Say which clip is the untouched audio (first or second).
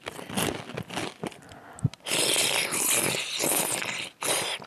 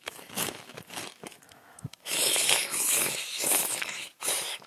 first